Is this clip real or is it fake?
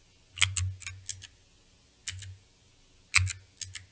real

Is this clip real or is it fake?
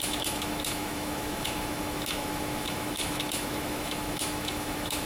fake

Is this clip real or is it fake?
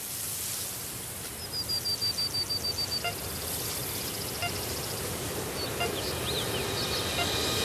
real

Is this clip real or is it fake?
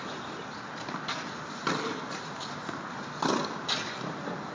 real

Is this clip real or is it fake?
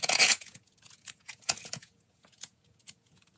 fake